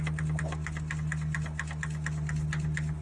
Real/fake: real